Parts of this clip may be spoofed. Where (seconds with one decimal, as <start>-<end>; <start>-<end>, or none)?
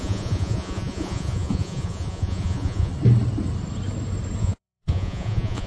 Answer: 0.0-2.9; 4.4-5.7